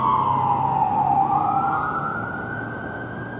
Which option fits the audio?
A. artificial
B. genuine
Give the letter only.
B